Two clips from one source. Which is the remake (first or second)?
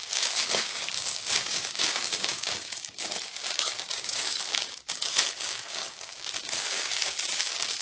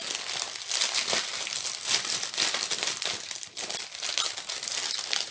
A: first